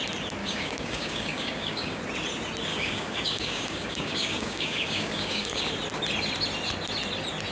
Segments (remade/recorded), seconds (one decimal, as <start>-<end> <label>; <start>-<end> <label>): 0.0-0.4 recorded; 0.4-2.0 remade; 2.0-2.7 recorded; 2.7-5.7 remade; 5.7-7.5 recorded